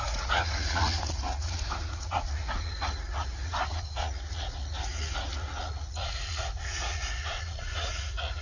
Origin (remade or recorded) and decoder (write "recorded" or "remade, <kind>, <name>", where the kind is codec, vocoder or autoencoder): remade, vocoder, Vocos